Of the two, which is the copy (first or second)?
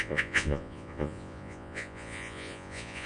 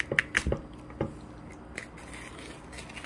first